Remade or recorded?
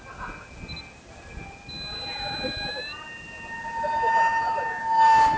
recorded